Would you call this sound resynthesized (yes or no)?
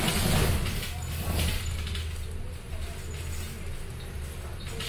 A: no